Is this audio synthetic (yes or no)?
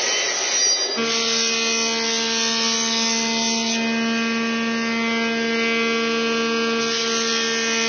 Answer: no